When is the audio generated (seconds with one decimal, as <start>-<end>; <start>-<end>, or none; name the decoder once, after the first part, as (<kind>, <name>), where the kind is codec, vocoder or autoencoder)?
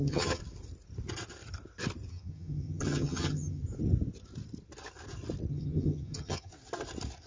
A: 0.0-0.4 (vocoder, HiFi-GAN); 2.1-3.6; 5.5-6.5